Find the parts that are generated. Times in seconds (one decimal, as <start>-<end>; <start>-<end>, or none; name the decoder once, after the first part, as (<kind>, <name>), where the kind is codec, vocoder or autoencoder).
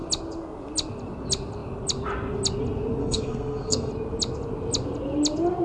3.0-3.9 (codec, SNAC)